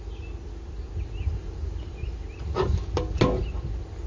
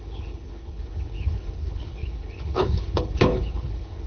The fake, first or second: second